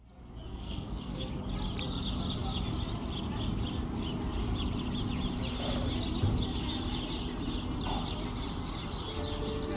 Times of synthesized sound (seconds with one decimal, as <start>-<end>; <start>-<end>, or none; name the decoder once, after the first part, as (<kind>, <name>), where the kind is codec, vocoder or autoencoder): 0.5-1.3 (codec, SNAC)